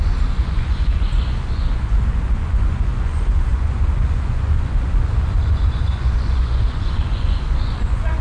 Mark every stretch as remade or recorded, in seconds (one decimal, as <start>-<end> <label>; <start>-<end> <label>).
0.0-8.2 remade